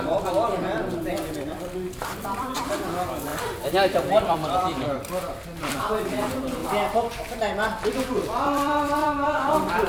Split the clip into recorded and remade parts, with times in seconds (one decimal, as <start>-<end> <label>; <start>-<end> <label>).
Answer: 0.0-6.6 remade; 6.6-8.4 recorded; 8.4-9.9 remade